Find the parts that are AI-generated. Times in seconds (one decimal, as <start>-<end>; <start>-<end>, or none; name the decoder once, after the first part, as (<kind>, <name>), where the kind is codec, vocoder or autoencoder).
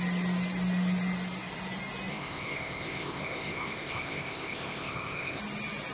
2.1-5.4 (codec, ZipCodec)